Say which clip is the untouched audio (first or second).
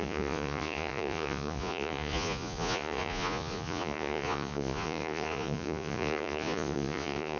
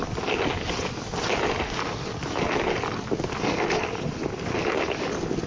second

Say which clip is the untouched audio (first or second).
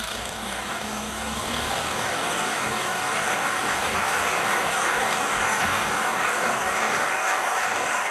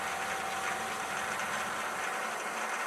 second